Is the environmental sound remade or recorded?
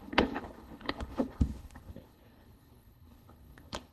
remade